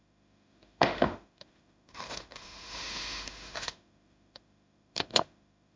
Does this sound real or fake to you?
fake